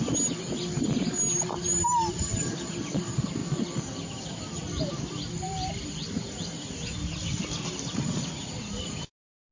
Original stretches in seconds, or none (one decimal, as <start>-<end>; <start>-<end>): 0.0-7.9; 8.5-9.5